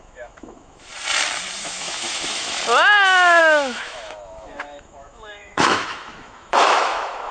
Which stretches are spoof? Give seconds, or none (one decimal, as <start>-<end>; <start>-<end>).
0.0-0.9; 1.6-2.6; 3.4-7.3